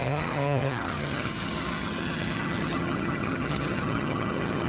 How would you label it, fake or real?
fake